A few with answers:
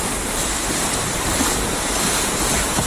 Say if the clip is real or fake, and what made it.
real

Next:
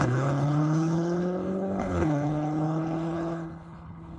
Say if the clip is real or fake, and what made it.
fake, codec, HILCodec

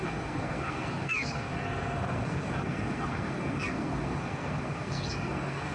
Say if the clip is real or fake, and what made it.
fake, codec, SNAC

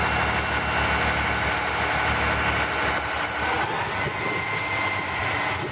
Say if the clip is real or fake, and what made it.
real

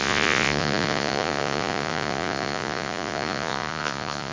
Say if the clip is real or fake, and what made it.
fake, vocoder, Vocos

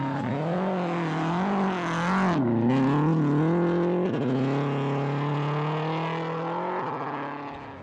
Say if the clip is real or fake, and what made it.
real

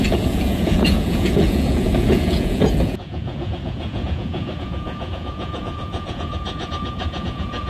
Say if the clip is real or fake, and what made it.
fake, vocoder, Vocos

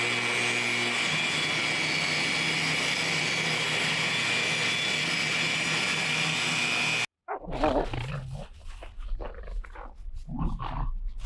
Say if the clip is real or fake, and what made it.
real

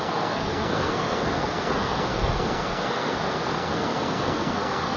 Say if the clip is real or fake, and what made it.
fake, codec, SNAC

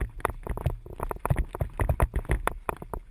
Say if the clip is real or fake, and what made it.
real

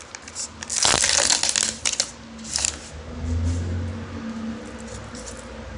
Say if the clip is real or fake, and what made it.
real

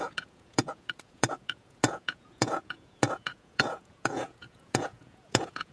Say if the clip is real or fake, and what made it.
fake, vocoder, Vocos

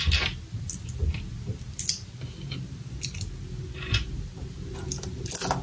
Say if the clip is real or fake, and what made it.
real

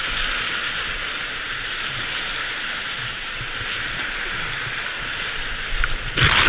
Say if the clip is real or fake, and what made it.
real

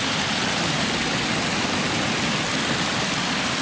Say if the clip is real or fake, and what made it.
real